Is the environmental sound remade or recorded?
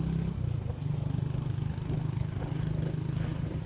recorded